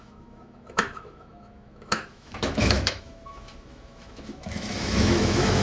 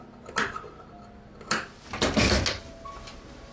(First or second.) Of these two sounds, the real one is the second